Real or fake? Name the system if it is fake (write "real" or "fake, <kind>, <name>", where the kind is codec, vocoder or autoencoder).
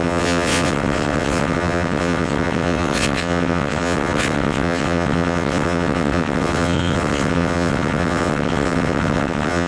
fake, vocoder, WaveNeXt